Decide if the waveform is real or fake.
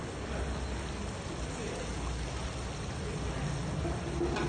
real